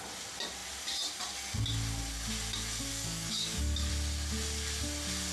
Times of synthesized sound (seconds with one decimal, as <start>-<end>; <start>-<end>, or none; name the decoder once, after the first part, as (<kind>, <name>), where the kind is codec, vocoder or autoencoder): 2.9-3.9 (codec, DAC)